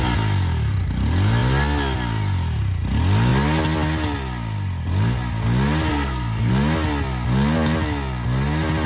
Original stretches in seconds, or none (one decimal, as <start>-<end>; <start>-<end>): 0.0-5.9; 6.5-8.9

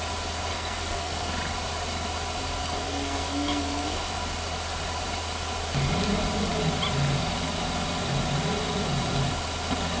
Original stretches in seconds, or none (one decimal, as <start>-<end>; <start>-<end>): 0.0-0.5; 1.3-2.6; 4.1-10.0

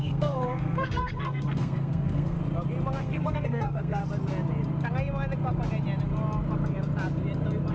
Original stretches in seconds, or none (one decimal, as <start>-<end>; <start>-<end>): 2.4-3.0; 4.0-7.7

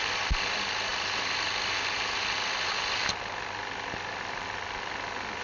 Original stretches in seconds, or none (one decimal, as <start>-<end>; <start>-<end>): 0.0-5.4